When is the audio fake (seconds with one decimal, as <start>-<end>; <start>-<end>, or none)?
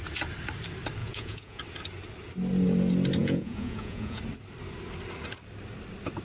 1.0-1.6; 3.2-4.2